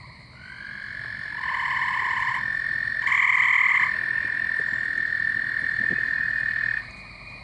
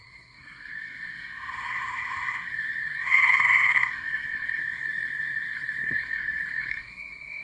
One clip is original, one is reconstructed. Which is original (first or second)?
first